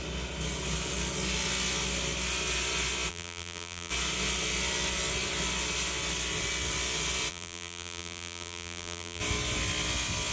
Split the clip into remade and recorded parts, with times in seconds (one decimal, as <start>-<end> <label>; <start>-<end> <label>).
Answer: 0.0-3.1 recorded; 3.1-3.9 remade; 3.9-7.3 recorded; 7.3-9.2 remade; 9.2-10.3 recorded